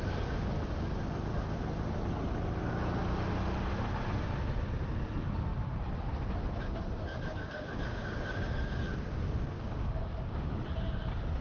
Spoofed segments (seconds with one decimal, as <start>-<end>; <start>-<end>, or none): 7.1-10.6

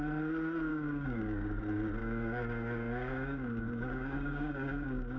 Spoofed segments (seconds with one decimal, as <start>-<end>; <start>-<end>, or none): 0.7-1.6; 2.0-5.2

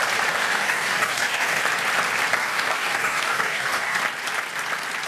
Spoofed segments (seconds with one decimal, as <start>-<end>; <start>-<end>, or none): 0.4-1.6; 2.4-4.0

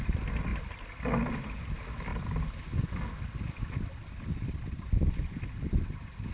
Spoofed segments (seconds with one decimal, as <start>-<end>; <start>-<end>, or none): none

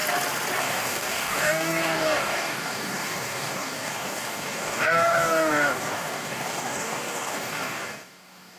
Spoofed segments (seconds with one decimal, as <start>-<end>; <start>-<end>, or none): 0.6-8.6